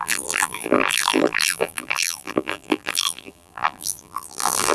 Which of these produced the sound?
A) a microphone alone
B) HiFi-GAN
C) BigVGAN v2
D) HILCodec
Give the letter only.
C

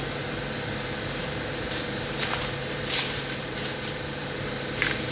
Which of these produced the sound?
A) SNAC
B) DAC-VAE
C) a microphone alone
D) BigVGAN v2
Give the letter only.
D